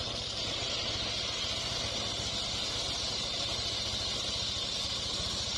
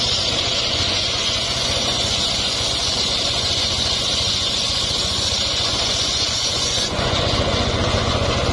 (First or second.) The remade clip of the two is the second